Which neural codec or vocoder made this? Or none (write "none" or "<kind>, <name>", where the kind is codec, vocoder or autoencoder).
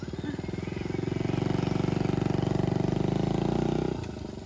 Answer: none